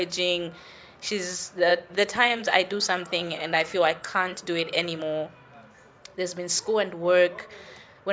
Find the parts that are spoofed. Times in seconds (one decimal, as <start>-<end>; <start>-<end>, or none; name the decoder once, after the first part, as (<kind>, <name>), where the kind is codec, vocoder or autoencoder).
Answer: 1.7-5.0 (vocoder, WaveNeXt)